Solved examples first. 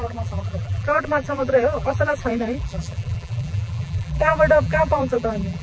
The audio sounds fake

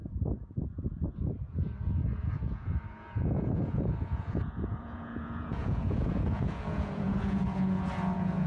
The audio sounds fake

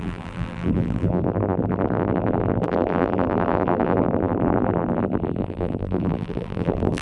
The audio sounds fake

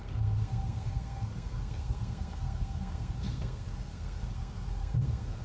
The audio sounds fake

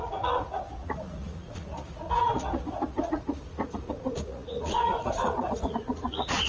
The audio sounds fake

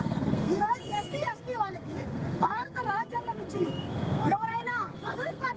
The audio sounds fake